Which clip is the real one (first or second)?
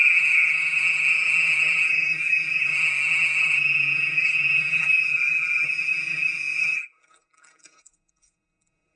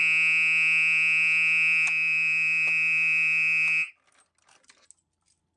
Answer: second